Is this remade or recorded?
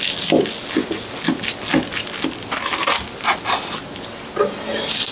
recorded